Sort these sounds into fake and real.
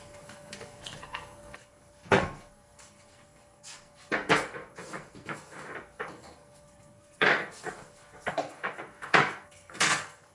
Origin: fake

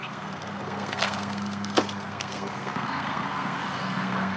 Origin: fake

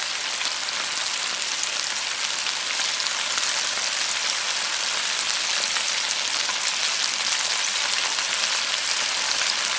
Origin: real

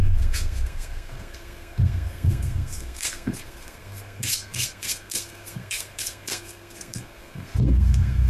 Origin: fake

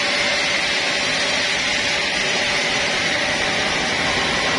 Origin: real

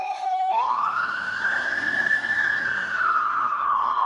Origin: fake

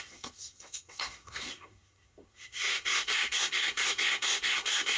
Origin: fake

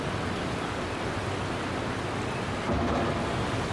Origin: real